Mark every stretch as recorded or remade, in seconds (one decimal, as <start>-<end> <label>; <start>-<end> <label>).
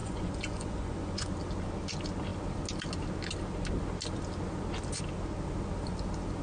0.0-1.3 remade; 1.3-6.4 recorded